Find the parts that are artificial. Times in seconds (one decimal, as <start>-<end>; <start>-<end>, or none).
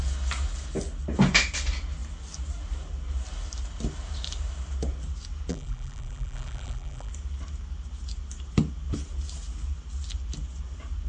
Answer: 5.5-7.1